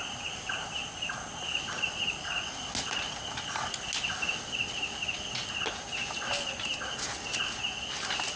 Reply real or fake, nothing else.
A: real